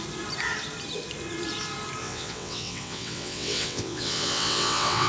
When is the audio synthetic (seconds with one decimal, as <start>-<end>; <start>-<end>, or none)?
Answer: 2.0-5.1